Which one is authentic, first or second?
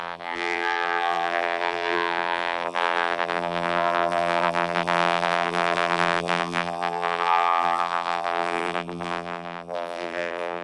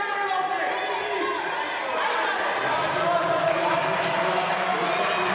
second